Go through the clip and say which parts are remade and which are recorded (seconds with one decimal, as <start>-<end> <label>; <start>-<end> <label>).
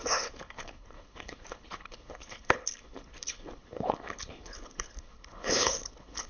0.0-6.3 remade